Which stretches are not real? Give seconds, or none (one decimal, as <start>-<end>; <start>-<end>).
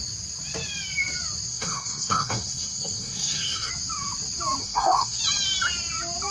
1.5-3.7; 4.6-5.2